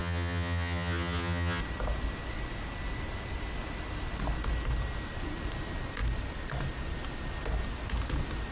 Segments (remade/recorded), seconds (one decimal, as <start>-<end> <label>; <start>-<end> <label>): 0.0-1.6 remade; 1.6-8.5 recorded